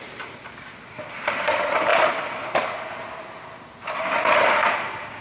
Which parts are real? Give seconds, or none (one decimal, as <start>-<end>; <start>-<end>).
0.0-5.2